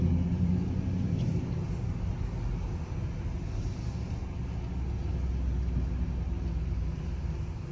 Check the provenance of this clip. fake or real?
real